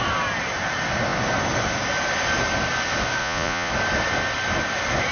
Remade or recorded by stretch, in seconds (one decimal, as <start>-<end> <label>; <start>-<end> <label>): 0.0-3.2 recorded; 3.2-3.7 remade; 3.7-5.1 recorded